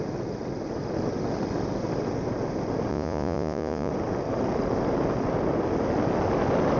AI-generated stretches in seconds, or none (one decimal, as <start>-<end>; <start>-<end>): 2.9-3.9